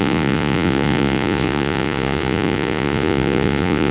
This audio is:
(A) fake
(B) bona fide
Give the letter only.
A